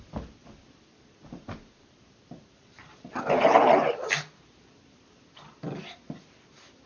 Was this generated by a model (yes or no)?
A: no